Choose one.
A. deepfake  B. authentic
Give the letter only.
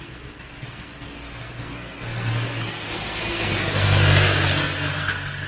A